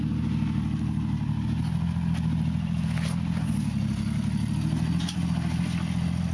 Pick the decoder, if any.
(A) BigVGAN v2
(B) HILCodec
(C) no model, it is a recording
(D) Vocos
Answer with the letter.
C